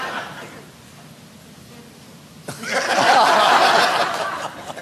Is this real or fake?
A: real